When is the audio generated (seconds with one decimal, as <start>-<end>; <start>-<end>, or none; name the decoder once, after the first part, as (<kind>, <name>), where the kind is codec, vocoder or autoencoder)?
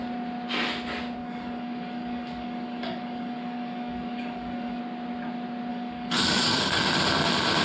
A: 1.2-4.8 (codec, DAC); 5.7-6.8